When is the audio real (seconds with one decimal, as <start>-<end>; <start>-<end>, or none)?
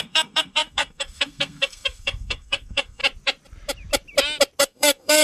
3.0-4.6